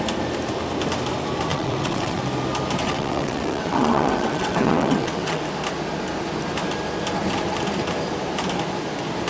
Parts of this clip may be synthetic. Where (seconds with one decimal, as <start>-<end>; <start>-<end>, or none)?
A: 1.5-2.2; 2.8-5.4